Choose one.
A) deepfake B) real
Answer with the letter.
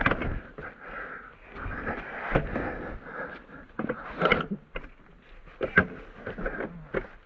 B